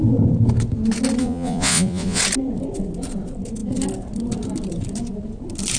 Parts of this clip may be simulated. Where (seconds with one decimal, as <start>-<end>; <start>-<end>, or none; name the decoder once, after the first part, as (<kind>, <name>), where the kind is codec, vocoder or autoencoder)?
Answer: 1.2-2.2 (vocoder, Vocos)